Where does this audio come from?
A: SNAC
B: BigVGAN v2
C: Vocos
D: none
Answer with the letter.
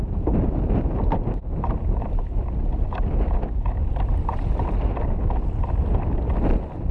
D